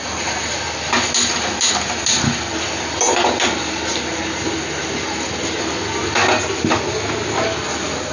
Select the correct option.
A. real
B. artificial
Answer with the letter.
A